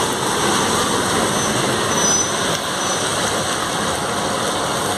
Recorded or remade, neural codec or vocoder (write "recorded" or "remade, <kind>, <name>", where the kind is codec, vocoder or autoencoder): recorded